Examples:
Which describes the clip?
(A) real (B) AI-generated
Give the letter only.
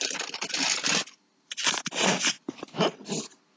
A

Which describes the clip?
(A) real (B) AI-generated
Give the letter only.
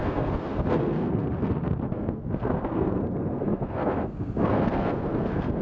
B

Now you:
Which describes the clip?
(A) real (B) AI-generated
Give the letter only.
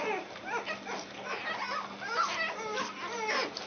A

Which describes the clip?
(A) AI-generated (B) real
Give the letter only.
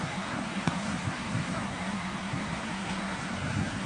A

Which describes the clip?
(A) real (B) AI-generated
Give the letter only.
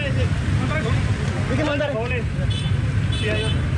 A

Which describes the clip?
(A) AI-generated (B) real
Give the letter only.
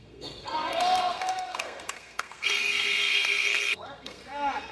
A